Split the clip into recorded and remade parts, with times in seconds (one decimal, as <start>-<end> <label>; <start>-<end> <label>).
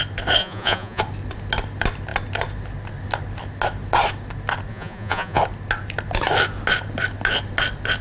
0.0-0.4 recorded; 0.4-1.0 remade; 1.0-4.7 recorded; 4.7-5.4 remade; 5.4-8.0 recorded